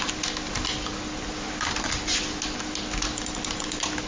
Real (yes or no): yes